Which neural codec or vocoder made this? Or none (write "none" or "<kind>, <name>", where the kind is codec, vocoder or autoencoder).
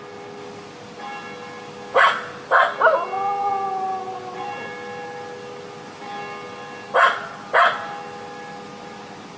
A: none